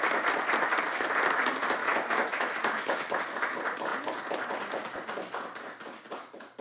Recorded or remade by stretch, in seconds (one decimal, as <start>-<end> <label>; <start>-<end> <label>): 0.0-1.8 recorded; 1.8-3.2 remade; 3.2-6.6 recorded